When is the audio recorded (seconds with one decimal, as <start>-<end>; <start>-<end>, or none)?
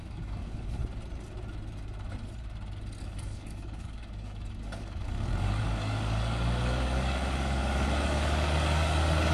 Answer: 0.8-3.0